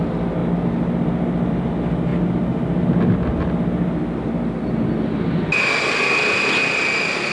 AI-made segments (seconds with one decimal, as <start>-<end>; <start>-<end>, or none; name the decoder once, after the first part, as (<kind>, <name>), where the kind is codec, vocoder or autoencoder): none